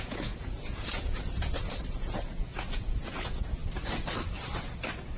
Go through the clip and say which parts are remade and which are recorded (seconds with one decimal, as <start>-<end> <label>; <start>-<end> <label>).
0.0-3.6 remade; 3.6-4.7 recorded; 4.7-5.2 remade